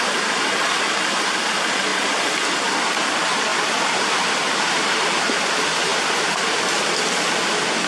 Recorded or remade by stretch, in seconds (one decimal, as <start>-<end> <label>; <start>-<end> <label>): 0.0-3.5 recorded; 3.5-4.1 remade; 4.1-5.9 recorded; 5.9-6.8 remade; 6.8-7.9 recorded